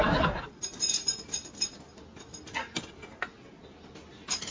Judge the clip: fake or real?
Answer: real